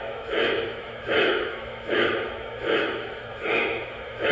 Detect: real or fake fake